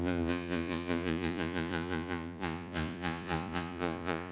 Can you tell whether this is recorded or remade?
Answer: remade